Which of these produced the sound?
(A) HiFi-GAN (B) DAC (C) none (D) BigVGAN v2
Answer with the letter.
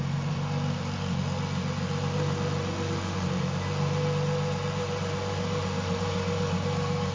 C